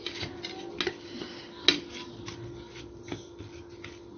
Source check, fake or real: real